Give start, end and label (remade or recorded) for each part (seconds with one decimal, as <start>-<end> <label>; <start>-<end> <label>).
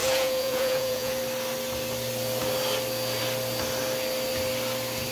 0.0-1.2 remade; 1.2-5.1 recorded